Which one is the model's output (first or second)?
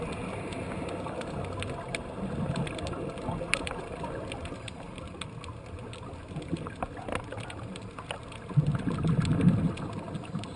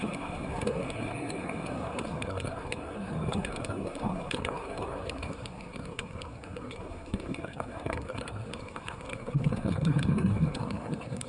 second